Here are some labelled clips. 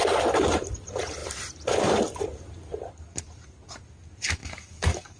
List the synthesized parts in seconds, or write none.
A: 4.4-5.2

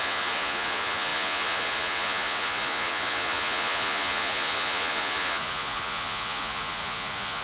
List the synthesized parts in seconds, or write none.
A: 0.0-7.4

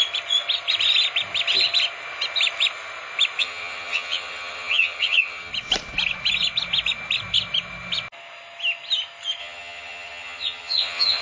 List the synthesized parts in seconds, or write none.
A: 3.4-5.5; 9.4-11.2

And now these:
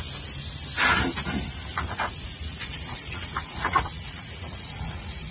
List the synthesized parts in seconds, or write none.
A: 1.7-5.3

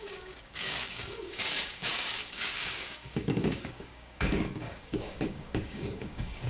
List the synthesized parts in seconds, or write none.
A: 0.0-6.5

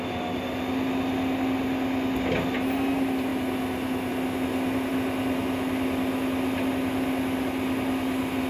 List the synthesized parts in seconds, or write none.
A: none

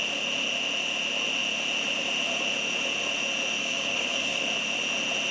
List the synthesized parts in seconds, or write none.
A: 3.6-4.4